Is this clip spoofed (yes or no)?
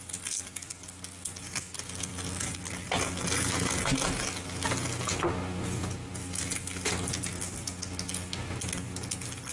no